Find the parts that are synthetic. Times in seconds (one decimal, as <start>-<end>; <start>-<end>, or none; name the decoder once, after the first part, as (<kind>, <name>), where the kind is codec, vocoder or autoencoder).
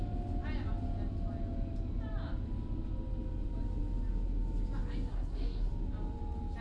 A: 5.1-5.7 (codec, SNAC)